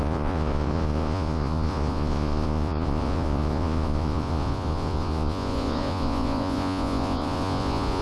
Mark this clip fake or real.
fake